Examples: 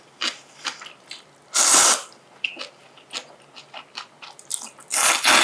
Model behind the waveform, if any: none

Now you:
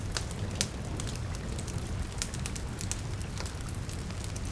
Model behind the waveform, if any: none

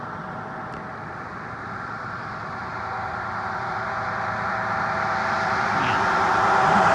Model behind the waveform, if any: vocoder, BigVGAN v2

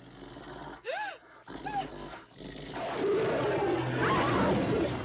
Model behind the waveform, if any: none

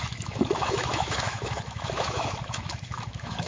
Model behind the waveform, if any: autoencoder, DAC-VAE